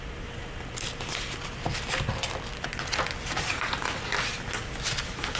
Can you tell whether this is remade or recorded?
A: recorded